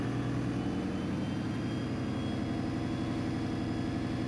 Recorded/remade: recorded